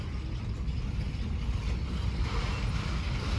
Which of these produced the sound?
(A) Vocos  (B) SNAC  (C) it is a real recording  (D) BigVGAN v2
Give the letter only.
C